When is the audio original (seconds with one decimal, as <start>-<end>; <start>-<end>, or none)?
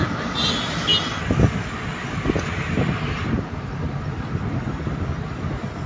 0.0-5.9